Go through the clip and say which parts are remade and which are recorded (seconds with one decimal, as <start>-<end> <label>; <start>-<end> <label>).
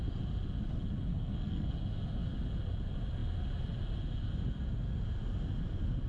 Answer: 0.0-1.1 recorded; 1.1-1.7 remade; 1.7-6.1 recorded